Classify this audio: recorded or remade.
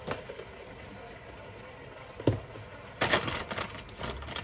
recorded